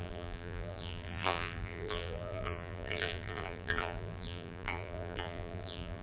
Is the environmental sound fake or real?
fake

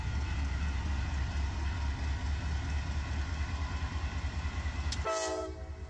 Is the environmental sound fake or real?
real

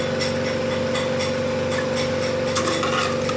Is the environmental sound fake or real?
real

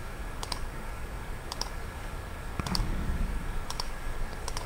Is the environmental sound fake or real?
fake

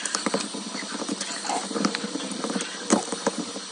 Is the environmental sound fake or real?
fake